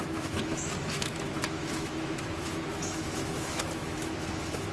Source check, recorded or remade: remade